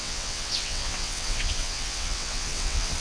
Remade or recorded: remade